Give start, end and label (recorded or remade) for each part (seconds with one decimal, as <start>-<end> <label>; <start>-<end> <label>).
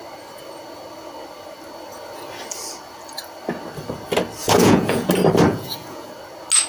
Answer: 0.0-4.4 recorded; 4.4-5.1 remade; 5.1-5.5 recorded; 5.5-6.1 remade; 6.1-6.7 recorded